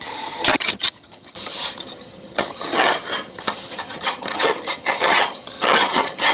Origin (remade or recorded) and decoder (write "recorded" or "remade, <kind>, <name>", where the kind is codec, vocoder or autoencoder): remade, vocoder, HiFi-GAN